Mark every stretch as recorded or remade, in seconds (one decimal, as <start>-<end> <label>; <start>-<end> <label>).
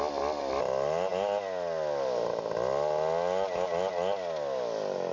0.0-5.1 recorded